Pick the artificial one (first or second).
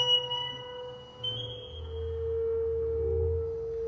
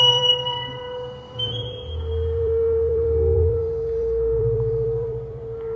second